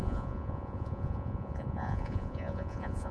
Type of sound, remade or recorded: remade